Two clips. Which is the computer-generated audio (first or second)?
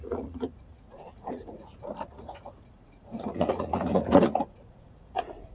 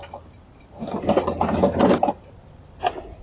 first